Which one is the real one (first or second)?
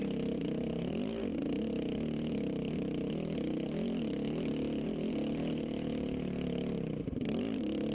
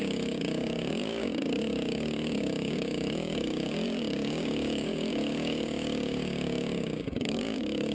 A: first